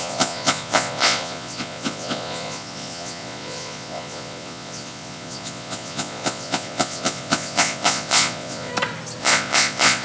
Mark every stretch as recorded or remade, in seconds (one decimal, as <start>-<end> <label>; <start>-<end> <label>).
0.0-8.7 remade; 8.7-9.2 recorded; 9.2-10.0 remade